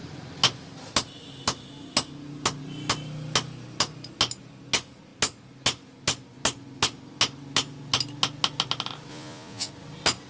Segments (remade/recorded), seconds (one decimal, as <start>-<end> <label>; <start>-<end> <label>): 0.0-9.1 recorded; 9.1-9.7 remade; 9.7-10.3 recorded